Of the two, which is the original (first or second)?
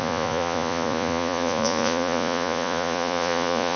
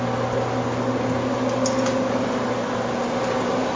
second